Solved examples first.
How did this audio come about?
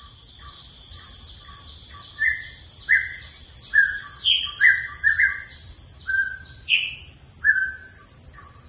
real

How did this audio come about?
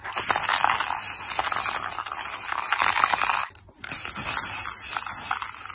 real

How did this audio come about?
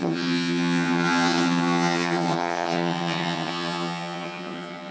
fake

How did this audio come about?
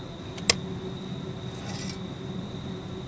real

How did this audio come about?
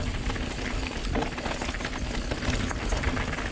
real